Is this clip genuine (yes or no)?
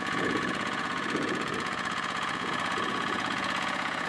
no